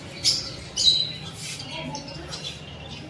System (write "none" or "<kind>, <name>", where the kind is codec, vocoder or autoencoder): none